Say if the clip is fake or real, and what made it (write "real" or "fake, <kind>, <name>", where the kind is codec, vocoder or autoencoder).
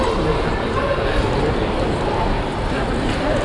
real